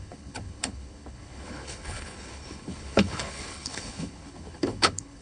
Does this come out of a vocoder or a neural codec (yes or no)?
yes